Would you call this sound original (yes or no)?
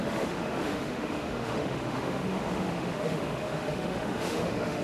no